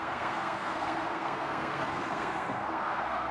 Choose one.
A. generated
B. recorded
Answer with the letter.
A